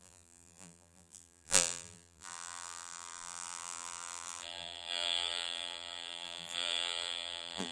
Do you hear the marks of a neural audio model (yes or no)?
yes